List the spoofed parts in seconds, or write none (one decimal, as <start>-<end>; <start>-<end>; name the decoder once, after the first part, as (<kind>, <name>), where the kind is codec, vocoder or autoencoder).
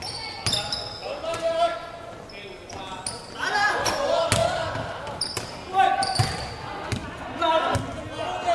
4.4-5.4 (vocoder, BigVGAN v2)